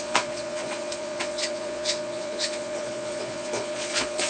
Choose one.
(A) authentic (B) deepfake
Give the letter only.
B